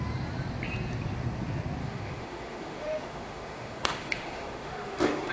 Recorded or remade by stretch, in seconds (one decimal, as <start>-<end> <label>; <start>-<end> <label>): 0.0-1.8 recorded; 1.8-5.3 remade